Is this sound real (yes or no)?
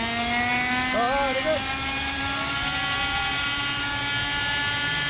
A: yes